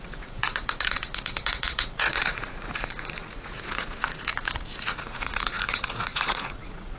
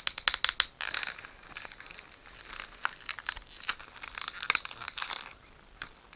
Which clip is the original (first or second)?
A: second